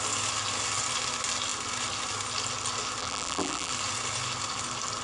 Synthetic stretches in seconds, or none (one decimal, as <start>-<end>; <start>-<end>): 3.0-3.7